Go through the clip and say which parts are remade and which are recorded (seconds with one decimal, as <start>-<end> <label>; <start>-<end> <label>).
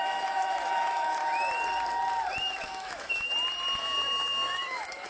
0.0-1.2 remade; 1.2-2.6 recorded; 2.6-3.3 remade; 3.3-3.8 recorded; 3.8-5.1 remade